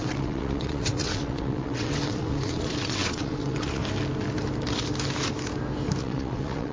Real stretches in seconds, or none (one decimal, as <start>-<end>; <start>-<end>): 3.8-6.0